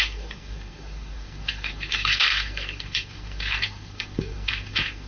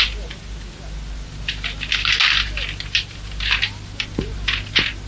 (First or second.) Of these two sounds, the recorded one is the second